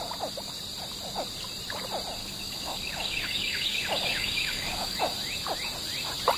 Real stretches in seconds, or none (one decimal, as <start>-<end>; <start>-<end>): 0.0-2.2; 5.0-6.4